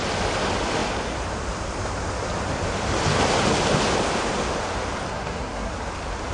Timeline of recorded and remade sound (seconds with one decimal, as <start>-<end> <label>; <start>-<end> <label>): 0.0-5.1 recorded; 5.1-5.7 remade; 5.7-6.3 recorded